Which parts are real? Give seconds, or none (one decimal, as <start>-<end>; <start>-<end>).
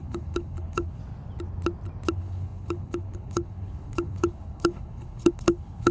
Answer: 1.0-2.1